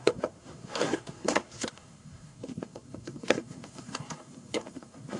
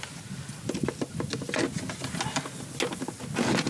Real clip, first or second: second